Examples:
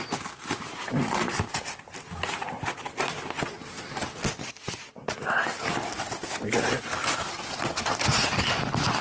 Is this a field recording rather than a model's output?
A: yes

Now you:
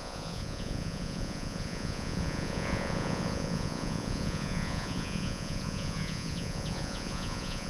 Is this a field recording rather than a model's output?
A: no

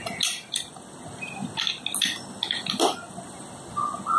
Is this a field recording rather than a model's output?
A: yes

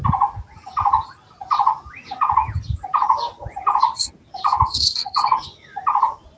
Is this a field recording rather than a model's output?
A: yes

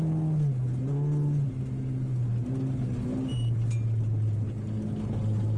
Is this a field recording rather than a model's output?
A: yes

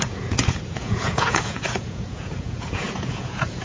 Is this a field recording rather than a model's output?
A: no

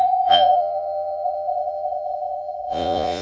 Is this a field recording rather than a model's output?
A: no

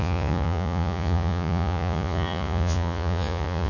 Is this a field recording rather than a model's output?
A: no